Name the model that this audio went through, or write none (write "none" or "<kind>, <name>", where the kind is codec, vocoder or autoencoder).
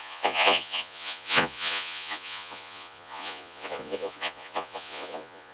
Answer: vocoder, Vocos